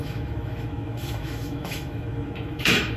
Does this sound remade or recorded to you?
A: remade